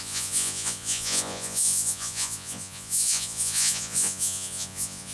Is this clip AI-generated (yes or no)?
yes